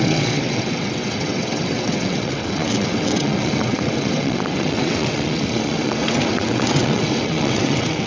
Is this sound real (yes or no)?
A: no